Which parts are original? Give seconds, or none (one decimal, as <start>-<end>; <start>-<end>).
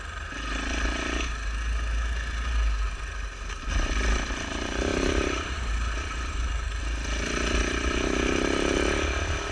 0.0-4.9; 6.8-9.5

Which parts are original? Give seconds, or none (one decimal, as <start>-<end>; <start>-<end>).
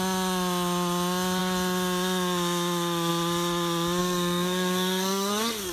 0.0-4.0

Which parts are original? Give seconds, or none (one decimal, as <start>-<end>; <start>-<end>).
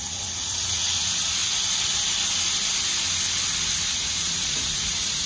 1.4-3.9